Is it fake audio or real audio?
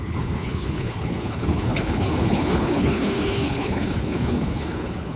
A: fake